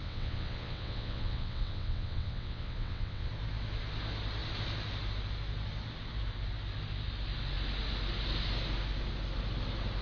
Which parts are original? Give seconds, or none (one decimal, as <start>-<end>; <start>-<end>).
3.3-10.0